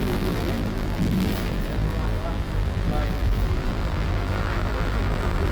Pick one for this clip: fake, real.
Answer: fake